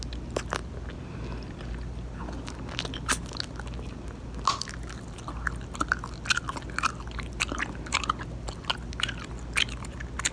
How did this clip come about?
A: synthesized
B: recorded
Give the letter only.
B